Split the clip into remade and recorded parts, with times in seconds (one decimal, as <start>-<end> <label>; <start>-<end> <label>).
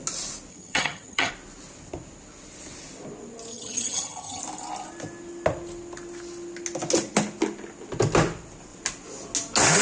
0.0-0.5 recorded; 0.5-1.3 remade; 1.3-3.5 recorded; 3.5-4.4 remade; 4.4-9.8 recorded